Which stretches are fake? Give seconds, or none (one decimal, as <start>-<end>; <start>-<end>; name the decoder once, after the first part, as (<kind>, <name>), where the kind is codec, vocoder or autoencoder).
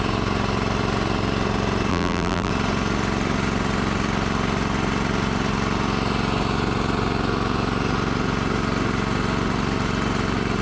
1.9-2.5 (vocoder, BigVGAN v2)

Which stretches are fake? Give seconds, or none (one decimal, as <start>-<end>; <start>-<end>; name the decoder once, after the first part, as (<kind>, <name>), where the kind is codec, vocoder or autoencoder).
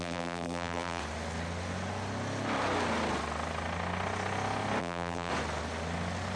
0.0-1.0 (vocoder, BigVGAN v2); 4.8-5.3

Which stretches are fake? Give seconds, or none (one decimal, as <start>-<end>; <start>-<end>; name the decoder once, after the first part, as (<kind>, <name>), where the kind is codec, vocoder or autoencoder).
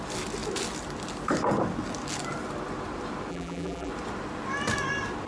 3.3-3.9 (vocoder, BigVGAN v2)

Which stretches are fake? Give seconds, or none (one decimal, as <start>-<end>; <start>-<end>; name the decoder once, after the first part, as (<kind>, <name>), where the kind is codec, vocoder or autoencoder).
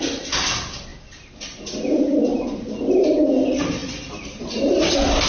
0.9-2.6 (vocoder, BigVGAN v2)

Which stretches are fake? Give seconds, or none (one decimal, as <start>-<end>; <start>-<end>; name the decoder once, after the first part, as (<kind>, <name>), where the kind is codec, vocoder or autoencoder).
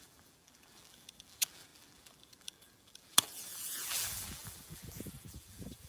0.0-5.9 (vocoder, BigVGAN v2)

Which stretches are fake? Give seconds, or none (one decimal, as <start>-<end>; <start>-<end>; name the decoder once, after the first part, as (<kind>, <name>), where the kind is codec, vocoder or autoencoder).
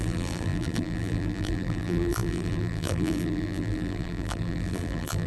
0.0-5.3 (vocoder, BigVGAN v2)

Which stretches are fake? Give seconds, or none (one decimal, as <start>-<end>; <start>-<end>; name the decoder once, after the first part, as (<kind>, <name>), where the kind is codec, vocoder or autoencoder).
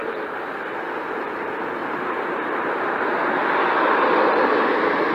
0.0-1.8 (vocoder, BigVGAN v2); 2.7-5.1